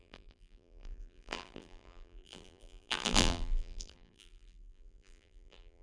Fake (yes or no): yes